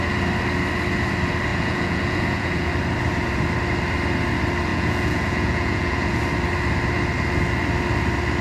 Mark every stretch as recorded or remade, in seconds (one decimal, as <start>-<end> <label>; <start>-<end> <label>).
0.0-1.5 recorded; 1.5-2.7 remade; 2.7-4.7 recorded; 4.7-6.2 remade; 6.2-8.4 recorded